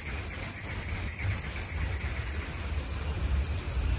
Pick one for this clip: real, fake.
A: fake